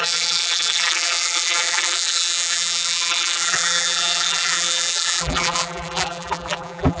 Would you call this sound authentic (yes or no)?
no